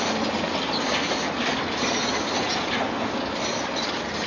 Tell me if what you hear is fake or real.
real